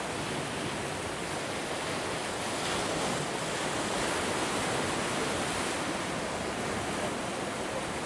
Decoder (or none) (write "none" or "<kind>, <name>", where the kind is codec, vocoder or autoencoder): none